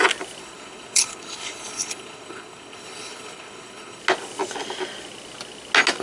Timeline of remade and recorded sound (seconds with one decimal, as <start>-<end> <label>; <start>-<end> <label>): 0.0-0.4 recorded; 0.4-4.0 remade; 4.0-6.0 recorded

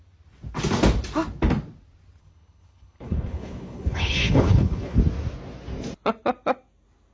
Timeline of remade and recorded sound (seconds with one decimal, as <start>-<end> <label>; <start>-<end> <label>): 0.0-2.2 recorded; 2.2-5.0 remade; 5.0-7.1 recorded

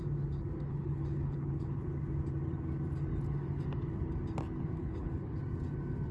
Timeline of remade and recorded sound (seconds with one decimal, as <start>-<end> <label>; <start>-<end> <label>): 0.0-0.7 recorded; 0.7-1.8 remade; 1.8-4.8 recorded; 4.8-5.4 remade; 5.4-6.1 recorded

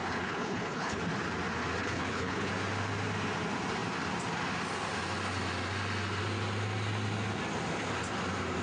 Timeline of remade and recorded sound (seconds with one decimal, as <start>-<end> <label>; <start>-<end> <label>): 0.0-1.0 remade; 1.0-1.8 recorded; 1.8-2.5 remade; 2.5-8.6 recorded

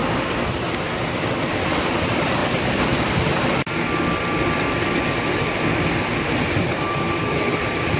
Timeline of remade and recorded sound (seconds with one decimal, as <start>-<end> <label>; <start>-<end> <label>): 0.0-8.0 recorded

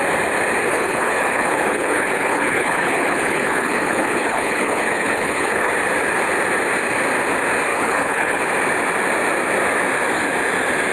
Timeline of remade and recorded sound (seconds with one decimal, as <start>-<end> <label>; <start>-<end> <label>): 0.0-0.7 recorded; 0.7-5.7 remade; 5.7-7.7 recorded; 7.7-8.4 remade; 8.4-10.9 recorded